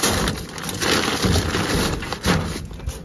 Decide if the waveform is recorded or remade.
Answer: recorded